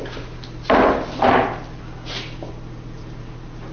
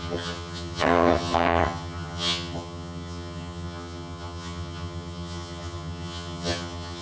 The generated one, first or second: second